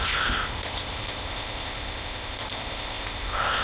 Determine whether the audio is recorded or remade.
remade